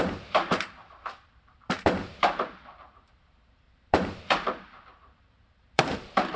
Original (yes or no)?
no